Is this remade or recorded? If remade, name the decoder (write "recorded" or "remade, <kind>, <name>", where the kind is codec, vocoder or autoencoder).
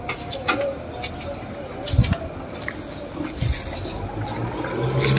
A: recorded